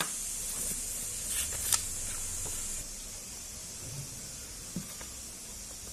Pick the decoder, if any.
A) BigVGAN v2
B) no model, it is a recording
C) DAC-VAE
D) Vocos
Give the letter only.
B